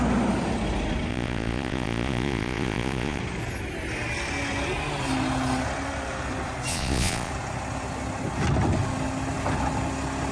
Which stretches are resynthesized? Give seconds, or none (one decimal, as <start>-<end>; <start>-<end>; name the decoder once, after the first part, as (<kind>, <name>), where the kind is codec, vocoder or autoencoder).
1.1-3.2 (vocoder, Vocos); 6.7-7.3